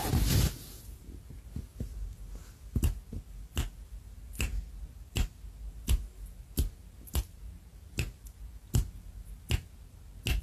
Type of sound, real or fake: real